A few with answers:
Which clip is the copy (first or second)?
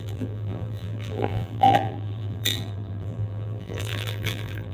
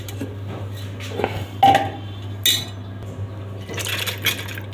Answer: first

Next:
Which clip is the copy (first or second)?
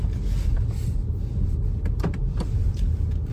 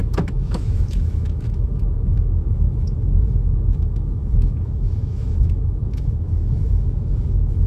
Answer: second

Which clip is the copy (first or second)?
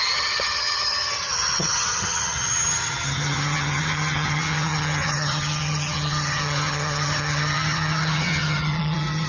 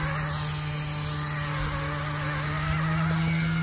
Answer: first